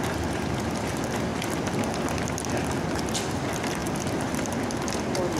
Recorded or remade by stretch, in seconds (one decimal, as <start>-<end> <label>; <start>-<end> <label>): 0.0-5.4 recorded